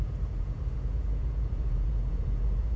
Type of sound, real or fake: fake